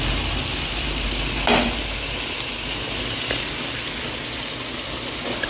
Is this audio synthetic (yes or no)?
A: no